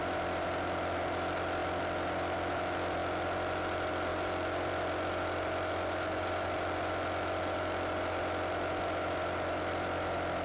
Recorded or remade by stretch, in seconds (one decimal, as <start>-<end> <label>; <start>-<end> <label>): 0.0-10.4 recorded